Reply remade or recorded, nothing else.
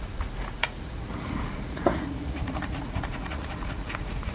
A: remade